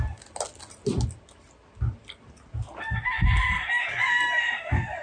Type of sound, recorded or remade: recorded